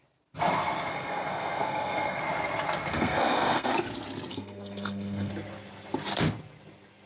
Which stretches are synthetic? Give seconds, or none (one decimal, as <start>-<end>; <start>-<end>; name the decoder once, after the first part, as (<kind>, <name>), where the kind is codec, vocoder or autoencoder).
0.9-2.2 (codec, SNAC); 2.9-3.7; 4.3-5.3